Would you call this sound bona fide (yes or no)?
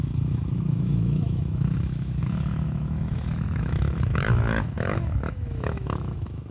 no